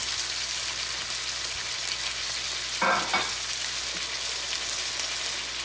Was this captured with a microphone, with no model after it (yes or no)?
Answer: yes